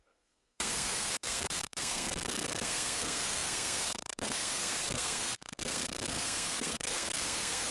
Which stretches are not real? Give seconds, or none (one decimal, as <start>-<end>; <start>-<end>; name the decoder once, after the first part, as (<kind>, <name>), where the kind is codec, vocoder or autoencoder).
0.0-7.7 (codec, SNAC)